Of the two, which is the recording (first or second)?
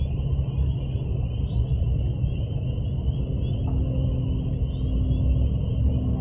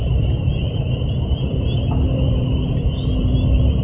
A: first